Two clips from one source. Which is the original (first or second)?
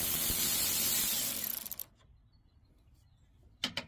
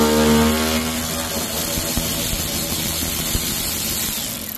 second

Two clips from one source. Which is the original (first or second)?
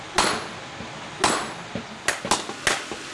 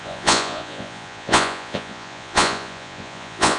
first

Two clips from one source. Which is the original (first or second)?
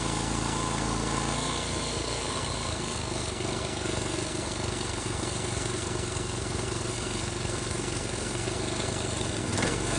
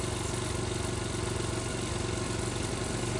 second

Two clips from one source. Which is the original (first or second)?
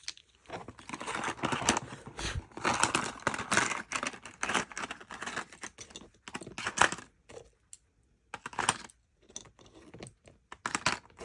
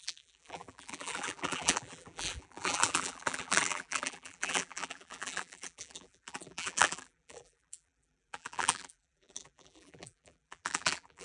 first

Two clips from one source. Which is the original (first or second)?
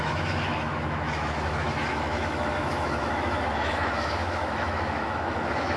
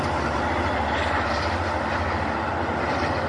second